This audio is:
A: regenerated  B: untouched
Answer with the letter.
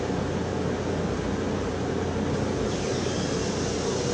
B